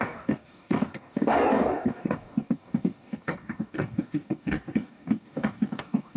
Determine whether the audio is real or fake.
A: fake